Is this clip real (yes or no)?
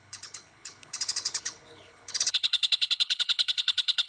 no